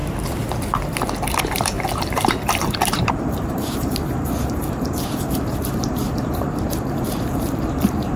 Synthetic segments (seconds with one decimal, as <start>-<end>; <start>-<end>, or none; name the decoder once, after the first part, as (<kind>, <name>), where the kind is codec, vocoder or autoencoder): 1.4-8.2 (vocoder, BigVGAN v2)